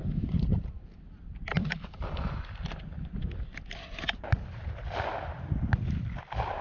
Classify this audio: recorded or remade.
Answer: recorded